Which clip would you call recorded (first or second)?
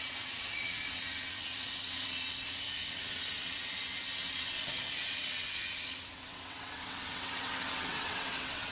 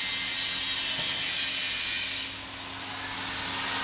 second